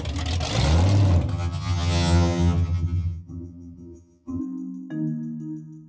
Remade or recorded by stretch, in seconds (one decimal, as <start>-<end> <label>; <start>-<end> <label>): 0.0-1.3 recorded; 1.3-4.4 remade; 4.4-5.9 recorded